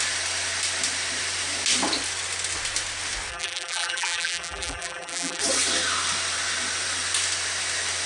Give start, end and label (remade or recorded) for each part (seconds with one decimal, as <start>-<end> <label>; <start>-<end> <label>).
0.0-3.3 recorded; 3.3-5.4 remade; 5.4-8.1 recorded